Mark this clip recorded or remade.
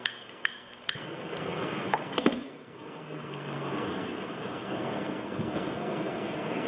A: remade